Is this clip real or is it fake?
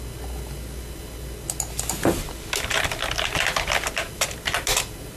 real